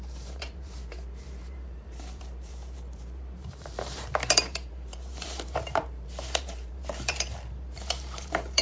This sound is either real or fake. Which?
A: fake